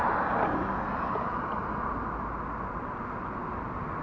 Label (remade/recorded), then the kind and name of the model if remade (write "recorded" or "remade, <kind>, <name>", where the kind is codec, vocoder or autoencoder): recorded